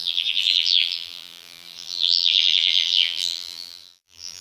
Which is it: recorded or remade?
remade